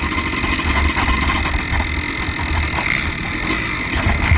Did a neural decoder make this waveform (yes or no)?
no